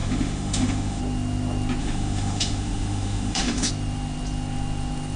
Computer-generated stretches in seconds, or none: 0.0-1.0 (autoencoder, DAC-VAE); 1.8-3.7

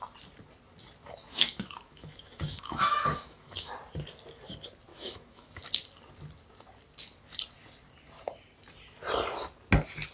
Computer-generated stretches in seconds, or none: 1.0-3.7 (autoencoder, DAC-VAE); 4.9-5.6

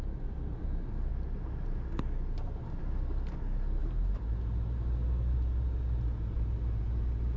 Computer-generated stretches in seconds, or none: none

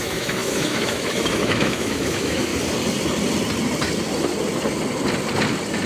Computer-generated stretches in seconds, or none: 0.0-2.5 (autoencoder, DAC-VAE)

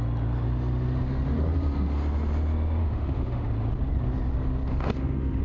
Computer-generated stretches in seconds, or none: 2.8-3.5 (autoencoder, DAC-VAE); 4.7-5.4